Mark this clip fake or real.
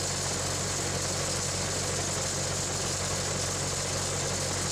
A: real